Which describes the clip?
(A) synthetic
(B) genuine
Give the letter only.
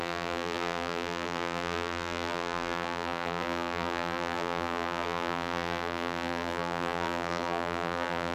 A